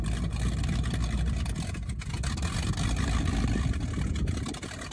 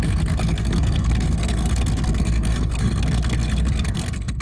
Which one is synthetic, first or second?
second